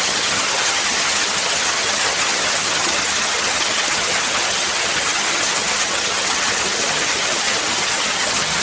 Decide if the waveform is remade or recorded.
remade